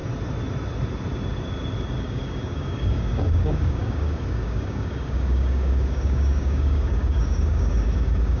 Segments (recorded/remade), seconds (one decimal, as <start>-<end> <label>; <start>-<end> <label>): 0.0-2.0 recorded; 2.0-8.4 remade